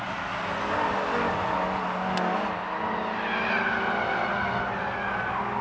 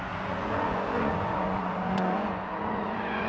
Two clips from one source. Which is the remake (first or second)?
second